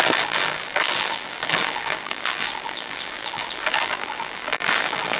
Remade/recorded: remade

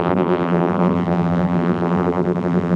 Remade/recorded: remade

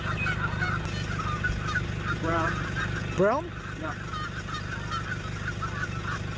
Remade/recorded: recorded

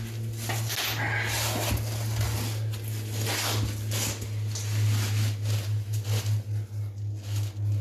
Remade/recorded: recorded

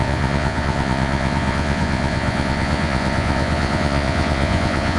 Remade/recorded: remade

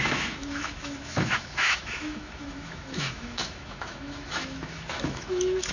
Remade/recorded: remade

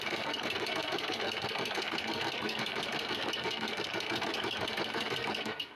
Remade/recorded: remade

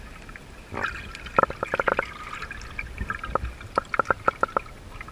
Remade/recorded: recorded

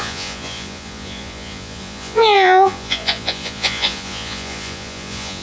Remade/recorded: remade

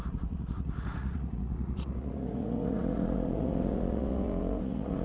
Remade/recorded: remade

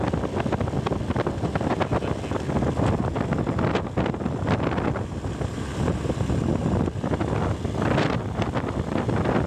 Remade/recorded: recorded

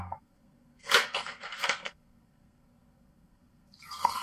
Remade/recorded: remade